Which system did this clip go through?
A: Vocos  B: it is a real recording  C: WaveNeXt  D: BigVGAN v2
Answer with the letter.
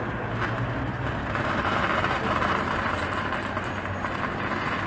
B